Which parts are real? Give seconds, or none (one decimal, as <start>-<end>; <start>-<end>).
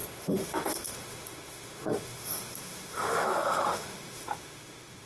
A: none